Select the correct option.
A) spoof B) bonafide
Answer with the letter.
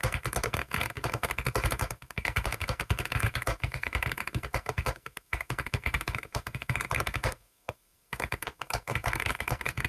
A